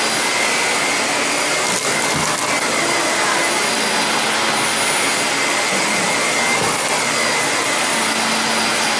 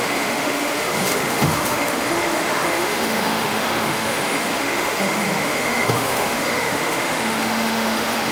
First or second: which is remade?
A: second